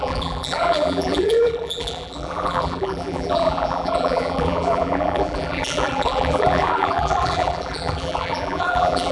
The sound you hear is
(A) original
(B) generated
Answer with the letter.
B